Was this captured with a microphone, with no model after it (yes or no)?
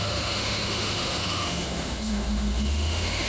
no